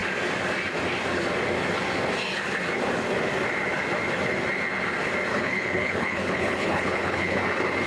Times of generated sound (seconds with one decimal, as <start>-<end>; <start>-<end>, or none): 5.3-7.4